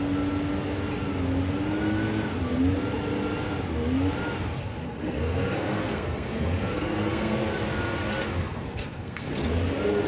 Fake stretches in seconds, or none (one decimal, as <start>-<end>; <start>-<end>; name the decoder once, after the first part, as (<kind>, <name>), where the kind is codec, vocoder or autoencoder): 4.6-7.4 (codec, SNAC); 8.4-9.3